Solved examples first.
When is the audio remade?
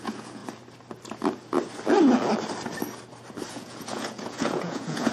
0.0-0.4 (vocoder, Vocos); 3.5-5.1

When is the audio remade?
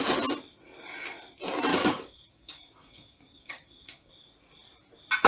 1.7-4.1 (codec, DAC)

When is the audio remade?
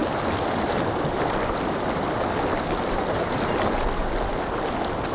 none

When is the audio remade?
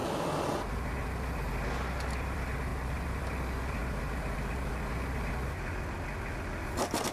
2.1-3.8 (vocoder, BigVGAN v2)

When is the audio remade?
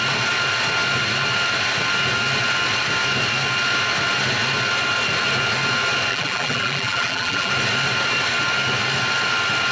6.1-7.5 (vocoder, BigVGAN v2)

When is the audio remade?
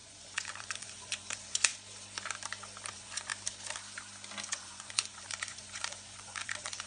0.0-1.7 (vocoder, Vocos); 2.9-3.3; 4.4-6.9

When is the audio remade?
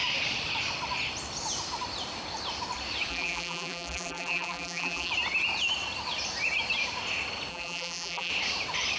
3.1-5.1 (vocoder, BigVGAN v2); 7.5-8.3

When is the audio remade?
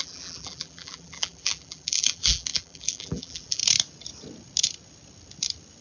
0.0-3.6 (vocoder, BigVGAN v2)